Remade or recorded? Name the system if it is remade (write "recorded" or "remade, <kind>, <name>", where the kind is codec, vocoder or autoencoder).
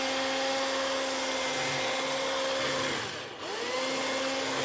recorded